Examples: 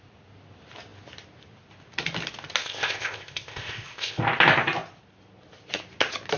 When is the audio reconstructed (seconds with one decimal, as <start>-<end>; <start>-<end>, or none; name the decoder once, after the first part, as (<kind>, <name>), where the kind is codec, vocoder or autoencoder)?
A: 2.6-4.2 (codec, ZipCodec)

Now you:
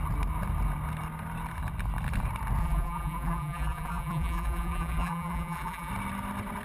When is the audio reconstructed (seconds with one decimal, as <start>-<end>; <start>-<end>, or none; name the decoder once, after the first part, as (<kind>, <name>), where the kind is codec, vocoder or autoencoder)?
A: 2.6-5.9 (vocoder, BigVGAN v2)

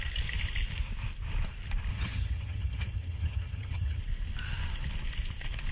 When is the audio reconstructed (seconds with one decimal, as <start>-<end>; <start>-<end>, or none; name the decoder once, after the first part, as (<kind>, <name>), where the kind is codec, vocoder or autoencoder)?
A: 1.9-4.0 (vocoder, HiFi-GAN)

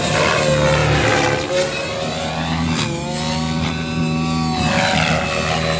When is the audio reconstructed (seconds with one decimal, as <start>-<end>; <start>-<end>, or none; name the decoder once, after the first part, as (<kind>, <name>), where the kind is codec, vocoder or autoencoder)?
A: none